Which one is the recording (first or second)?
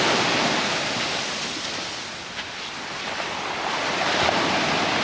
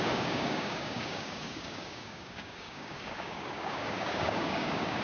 first